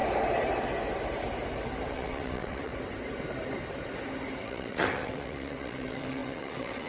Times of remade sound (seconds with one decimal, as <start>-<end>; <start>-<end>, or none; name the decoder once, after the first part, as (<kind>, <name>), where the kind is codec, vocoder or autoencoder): 1.9-2.7 (vocoder, WaveNeXt); 4.4-6.9